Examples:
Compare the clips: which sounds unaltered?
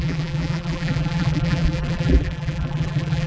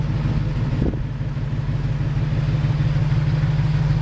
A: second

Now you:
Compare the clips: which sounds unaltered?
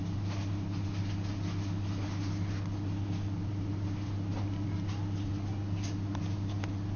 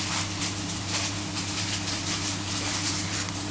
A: first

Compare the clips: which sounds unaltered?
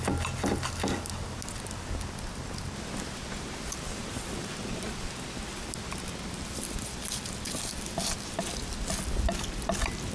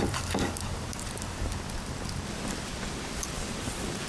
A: first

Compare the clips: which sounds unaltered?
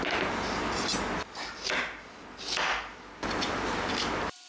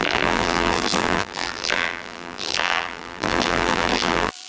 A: first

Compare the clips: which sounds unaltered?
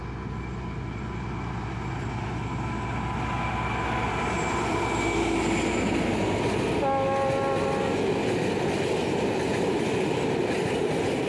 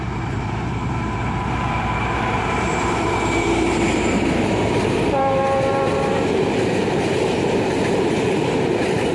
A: first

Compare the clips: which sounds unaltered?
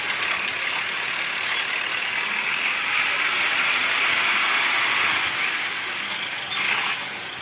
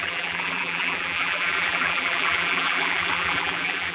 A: first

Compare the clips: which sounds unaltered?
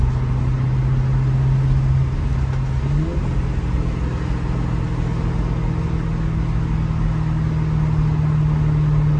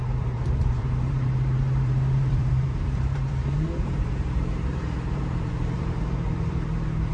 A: first